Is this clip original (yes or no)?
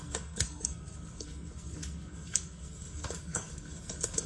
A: no